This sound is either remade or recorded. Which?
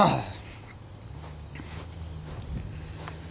recorded